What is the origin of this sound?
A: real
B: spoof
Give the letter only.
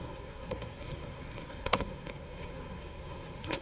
B